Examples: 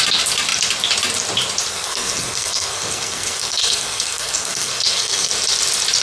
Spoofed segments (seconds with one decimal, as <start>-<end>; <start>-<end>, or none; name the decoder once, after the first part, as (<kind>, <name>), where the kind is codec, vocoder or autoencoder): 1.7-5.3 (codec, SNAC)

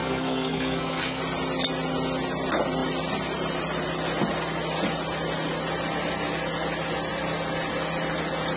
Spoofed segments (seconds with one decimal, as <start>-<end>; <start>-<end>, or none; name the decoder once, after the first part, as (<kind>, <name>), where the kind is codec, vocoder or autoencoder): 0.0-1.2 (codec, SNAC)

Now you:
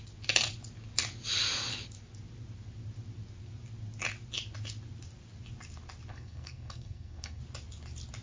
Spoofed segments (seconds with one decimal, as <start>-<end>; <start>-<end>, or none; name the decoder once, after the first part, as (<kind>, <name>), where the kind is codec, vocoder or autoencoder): 6.1-7.4 (codec, SNAC)